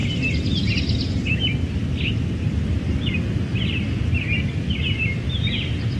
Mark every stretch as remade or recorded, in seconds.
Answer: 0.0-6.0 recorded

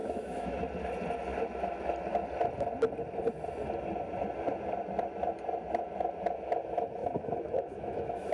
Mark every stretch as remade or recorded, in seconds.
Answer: 0.0-0.6 remade; 0.6-7.0 recorded; 7.0-8.3 remade

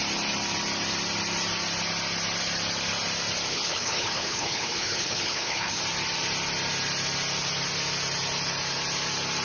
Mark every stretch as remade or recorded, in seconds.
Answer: 0.0-3.5 recorded; 3.5-5.8 remade; 5.8-9.4 recorded

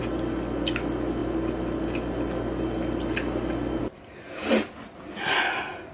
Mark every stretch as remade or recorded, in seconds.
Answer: 0.0-5.9 recorded